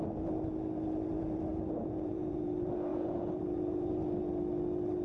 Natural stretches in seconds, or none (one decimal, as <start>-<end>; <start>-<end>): 0.0-1.5; 2.5-2.9; 3.9-5.0